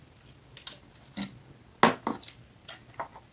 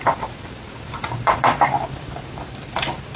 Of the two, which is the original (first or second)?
first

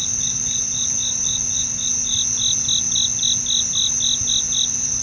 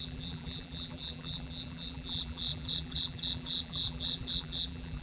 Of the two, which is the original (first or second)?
first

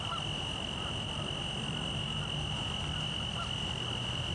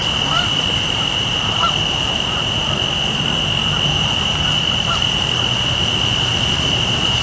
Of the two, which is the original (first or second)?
first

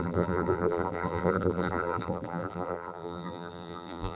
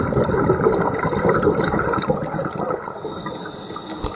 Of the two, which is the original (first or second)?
second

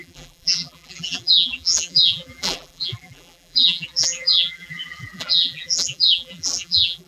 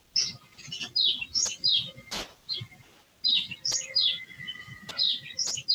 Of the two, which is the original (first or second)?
second